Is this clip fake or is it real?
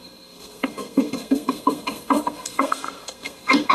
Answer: fake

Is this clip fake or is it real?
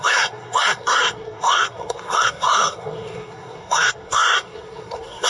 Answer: fake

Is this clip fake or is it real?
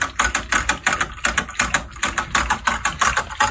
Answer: real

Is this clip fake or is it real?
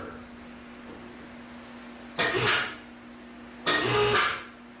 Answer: real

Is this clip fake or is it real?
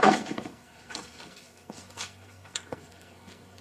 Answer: fake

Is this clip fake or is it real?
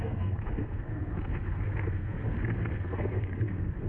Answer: fake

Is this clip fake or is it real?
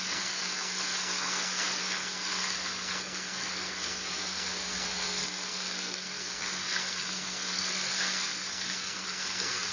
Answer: fake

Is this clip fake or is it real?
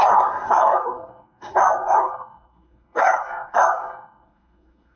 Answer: fake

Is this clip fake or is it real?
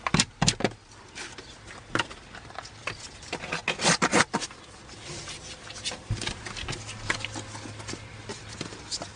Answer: real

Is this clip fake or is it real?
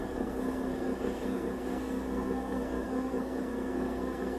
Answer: fake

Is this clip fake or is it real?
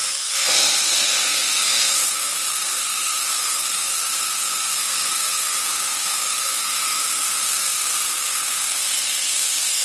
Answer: fake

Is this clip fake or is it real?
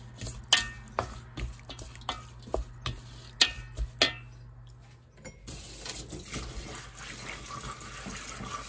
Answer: real